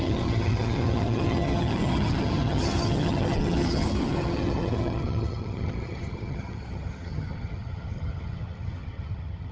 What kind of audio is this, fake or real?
fake